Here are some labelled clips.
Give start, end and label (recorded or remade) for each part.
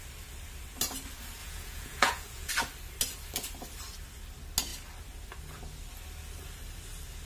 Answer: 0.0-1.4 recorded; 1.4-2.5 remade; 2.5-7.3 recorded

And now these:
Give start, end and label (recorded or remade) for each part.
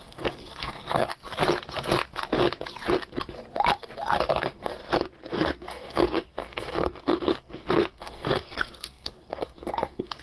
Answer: 0.0-1.1 remade; 1.1-4.3 recorded; 4.3-4.7 remade; 4.7-5.3 recorded; 5.3-10.2 remade